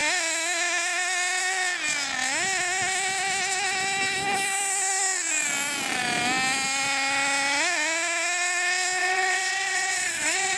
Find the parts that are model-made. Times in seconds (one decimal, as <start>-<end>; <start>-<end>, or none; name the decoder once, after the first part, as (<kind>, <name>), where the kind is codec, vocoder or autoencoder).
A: 9.0-10.6 (vocoder, WaveNeXt)